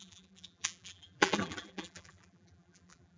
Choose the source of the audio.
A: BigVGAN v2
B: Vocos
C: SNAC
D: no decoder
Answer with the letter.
A